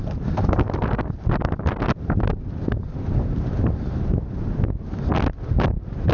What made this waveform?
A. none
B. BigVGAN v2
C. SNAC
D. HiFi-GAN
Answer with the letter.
A